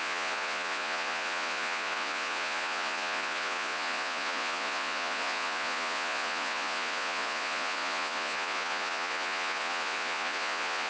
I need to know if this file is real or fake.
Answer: fake